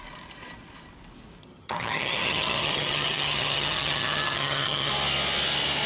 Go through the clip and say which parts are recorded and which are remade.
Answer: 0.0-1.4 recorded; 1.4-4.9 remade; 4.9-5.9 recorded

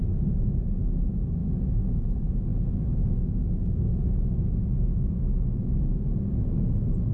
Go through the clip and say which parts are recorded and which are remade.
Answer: 0.0-1.4 recorded; 1.4-2.0 remade; 2.0-2.5 recorded; 2.5-5.9 remade; 5.9-7.1 recorded

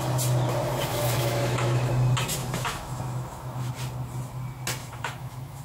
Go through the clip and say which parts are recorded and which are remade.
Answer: 0.0-0.9 recorded; 0.9-1.9 remade; 1.9-2.4 recorded; 2.4-3.7 remade; 3.7-4.8 recorded; 4.8-5.6 remade

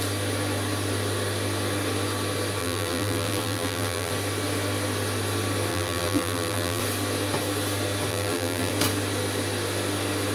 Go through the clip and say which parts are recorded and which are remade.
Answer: 0.0-2.6 recorded; 2.6-4.1 remade; 4.1-5.7 recorded; 5.7-6.8 remade; 6.8-8.1 recorded; 8.1-8.7 remade; 8.7-10.3 recorded

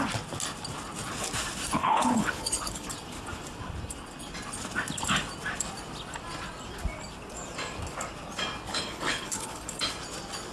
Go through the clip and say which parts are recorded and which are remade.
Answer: 0.0-1.8 recorded; 1.8-2.9 remade; 2.9-8.7 recorded; 8.7-9.9 remade; 9.9-10.5 recorded